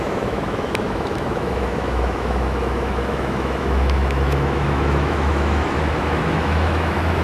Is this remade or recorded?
remade